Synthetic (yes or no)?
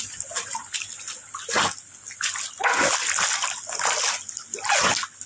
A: no